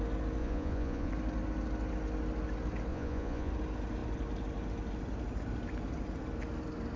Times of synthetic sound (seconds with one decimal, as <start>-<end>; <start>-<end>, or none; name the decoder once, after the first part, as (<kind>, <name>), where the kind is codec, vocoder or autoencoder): 0.4-1.1 (vocoder, Vocos); 2.9-3.5

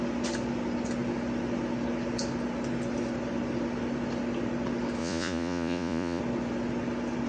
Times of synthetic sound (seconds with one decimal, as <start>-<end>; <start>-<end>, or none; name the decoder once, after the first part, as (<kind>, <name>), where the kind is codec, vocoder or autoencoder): 5.0-6.2 (vocoder, Vocos)

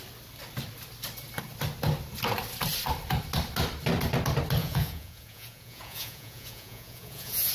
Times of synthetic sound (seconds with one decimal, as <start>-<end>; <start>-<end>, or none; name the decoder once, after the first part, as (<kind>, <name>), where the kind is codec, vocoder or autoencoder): 4.6-7.5 (vocoder, Vocos)

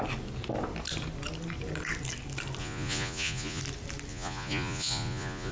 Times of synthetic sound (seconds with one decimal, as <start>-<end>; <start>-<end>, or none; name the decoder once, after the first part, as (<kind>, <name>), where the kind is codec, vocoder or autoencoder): 2.6-3.6 (vocoder, Vocos); 4.1-5.5

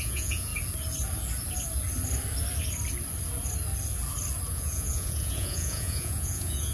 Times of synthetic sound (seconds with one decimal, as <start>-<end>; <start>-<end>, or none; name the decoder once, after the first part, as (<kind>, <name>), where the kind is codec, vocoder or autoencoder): 0.0-0.5 (vocoder, Vocos); 4.5-6.7

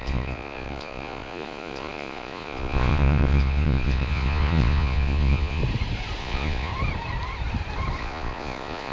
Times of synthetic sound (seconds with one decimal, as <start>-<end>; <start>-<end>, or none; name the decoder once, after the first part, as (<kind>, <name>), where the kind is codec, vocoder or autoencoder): 0.0-5.6 (vocoder, Vocos); 6.2-6.7; 8.0-8.9

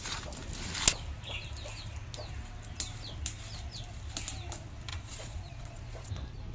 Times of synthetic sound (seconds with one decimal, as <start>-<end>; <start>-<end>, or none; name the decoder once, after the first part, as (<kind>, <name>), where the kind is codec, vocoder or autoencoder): 4.9-6.1 (vocoder, Vocos)